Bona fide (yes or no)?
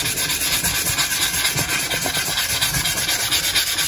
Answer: yes